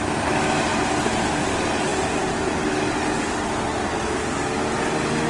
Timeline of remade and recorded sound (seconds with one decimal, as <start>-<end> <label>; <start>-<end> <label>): 0.0-0.7 recorded; 0.7-1.4 remade; 1.4-5.3 recorded